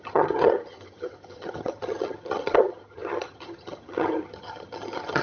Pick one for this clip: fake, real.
fake